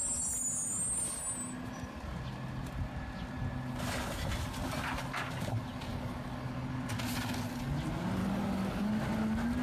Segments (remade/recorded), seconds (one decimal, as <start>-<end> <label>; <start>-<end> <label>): 0.0-5.9 recorded; 5.9-7.0 remade; 7.0-8.2 recorded; 8.2-8.9 remade; 8.9-9.6 recorded